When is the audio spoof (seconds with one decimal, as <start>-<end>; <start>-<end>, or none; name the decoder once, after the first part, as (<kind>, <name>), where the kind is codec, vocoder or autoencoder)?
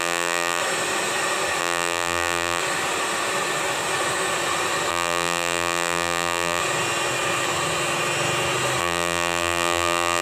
0.0-0.6 (vocoder, BigVGAN v2); 1.6-2.6; 4.9-6.6; 8.8-10.2